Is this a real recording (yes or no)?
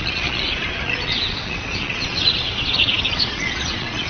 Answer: no